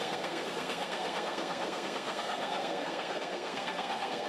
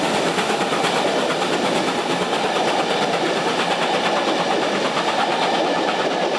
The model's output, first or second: first